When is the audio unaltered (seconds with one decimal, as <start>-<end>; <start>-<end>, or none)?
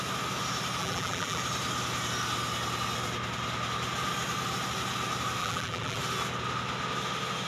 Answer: 0.0-0.8; 1.4-5.4; 6.0-7.5